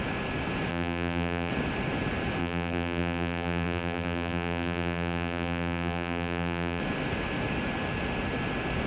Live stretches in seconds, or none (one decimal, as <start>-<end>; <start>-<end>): 0.0-0.7; 1.5-2.4; 6.8-8.9